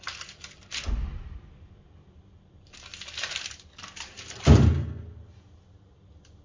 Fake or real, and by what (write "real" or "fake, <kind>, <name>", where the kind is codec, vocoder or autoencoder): real